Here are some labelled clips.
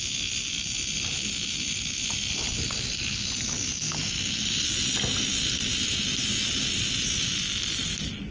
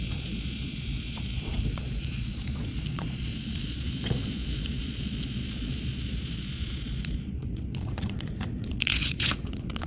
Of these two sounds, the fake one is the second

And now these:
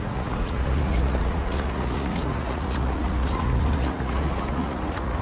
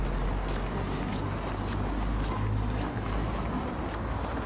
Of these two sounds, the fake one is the first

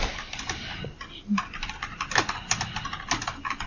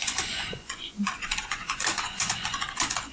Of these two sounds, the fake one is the second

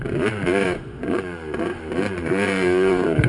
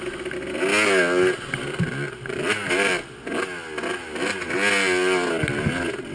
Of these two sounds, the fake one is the first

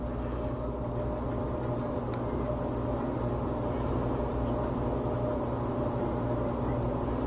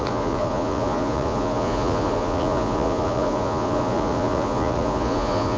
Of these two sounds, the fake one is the second